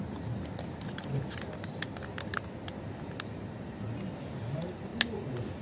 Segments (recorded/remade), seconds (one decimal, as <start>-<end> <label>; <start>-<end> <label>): 0.0-5.6 recorded